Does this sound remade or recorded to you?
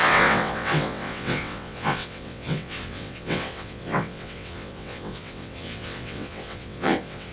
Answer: remade